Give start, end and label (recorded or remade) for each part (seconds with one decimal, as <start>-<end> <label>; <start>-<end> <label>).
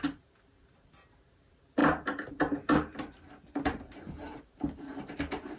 0.0-1.8 remade; 1.8-2.3 recorded; 2.3-2.7 remade; 2.7-3.4 recorded; 3.4-5.6 remade